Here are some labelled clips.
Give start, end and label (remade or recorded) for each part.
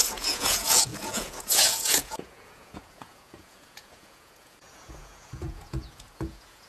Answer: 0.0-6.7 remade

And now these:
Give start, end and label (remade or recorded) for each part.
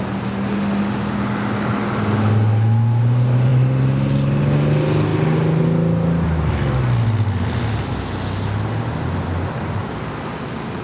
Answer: 0.0-10.8 recorded